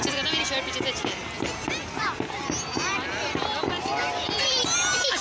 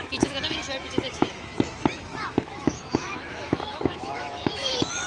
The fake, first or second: second